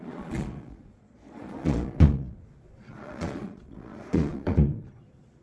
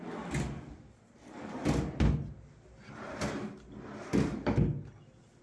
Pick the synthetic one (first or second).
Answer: first